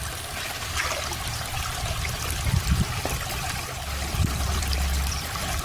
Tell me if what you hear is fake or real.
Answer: fake